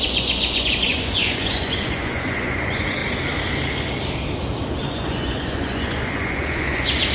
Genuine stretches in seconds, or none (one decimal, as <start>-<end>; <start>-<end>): 3.0-4.9